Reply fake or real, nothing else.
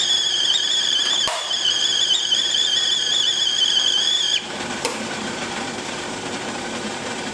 fake